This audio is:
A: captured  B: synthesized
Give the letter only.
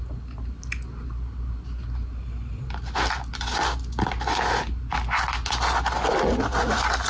A